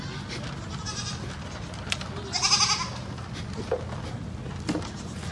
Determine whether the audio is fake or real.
real